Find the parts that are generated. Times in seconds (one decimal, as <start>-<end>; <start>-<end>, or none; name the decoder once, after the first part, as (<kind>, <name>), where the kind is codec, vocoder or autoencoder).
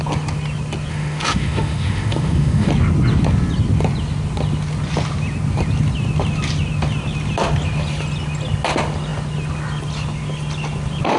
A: 0.9-2.7 (autoencoder, DAC-VAE)